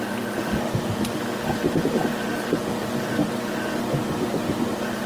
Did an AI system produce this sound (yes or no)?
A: no